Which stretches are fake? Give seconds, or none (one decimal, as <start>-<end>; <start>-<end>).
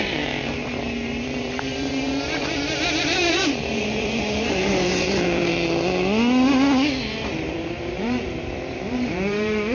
0.0-5.5; 7.2-9.7